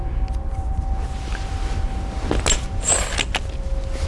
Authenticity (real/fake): real